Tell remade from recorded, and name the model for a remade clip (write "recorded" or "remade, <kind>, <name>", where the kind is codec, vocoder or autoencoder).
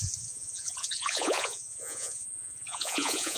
remade, vocoder, Vocos